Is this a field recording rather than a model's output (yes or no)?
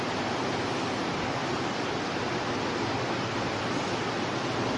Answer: yes